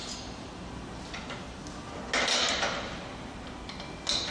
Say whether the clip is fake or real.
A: real